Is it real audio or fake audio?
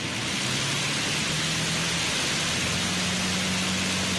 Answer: real